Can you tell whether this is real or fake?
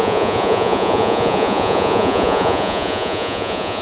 fake